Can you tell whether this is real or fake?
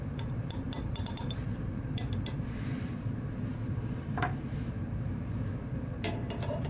fake